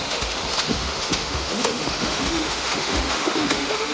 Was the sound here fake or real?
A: fake